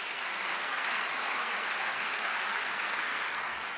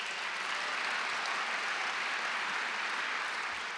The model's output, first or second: first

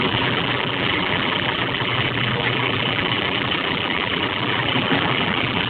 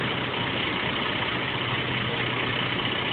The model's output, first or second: first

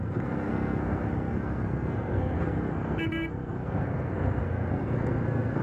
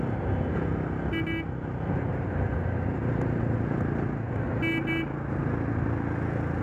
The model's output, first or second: first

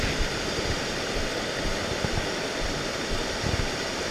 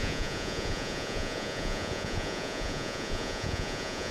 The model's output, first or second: second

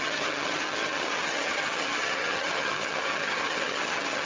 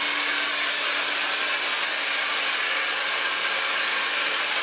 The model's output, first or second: first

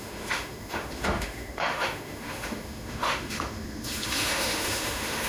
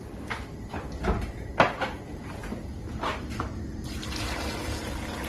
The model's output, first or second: first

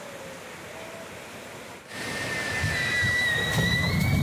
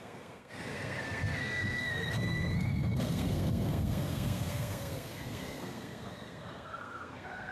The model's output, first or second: second